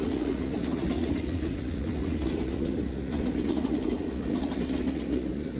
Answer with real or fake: fake